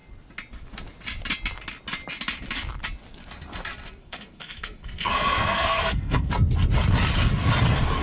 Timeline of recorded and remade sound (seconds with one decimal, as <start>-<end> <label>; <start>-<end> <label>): 0.0-4.0 recorded; 4.0-6.3 remade; 6.3-8.0 recorded